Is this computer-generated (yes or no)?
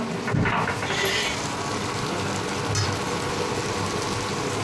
no